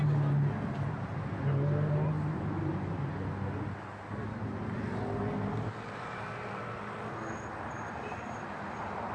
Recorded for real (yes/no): yes